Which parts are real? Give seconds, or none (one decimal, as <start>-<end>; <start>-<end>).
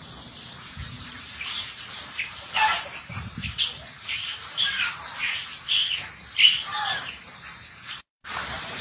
5.8-6.6